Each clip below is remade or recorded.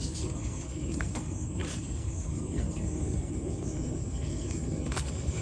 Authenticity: remade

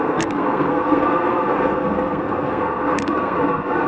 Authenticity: remade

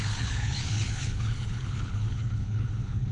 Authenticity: remade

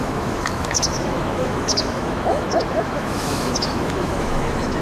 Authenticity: remade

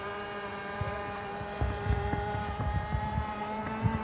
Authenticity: remade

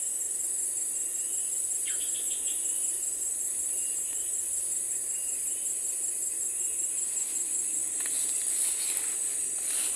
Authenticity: recorded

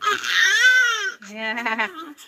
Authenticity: remade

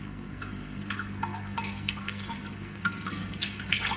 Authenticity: remade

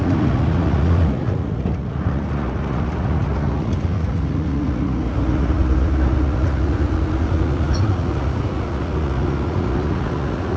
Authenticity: remade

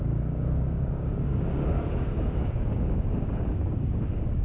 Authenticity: remade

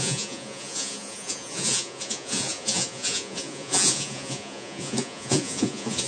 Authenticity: remade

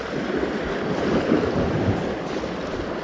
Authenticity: remade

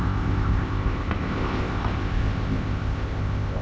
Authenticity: remade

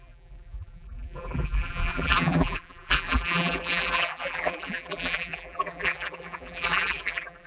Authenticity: remade